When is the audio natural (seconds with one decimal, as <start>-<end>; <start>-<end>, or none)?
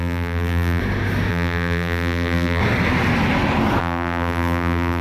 0.8-1.3; 2.6-3.8